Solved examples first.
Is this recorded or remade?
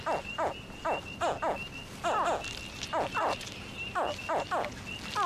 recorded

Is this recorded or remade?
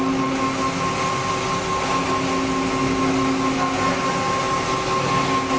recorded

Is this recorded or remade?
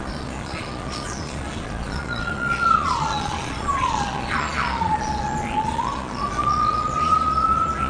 remade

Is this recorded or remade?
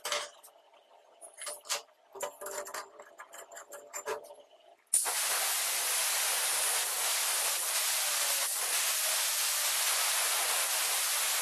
recorded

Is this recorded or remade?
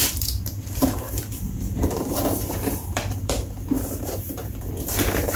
remade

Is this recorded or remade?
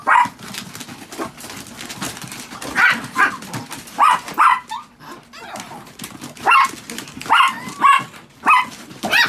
recorded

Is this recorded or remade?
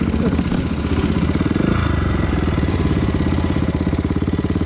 recorded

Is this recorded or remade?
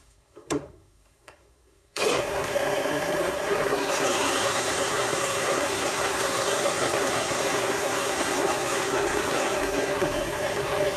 remade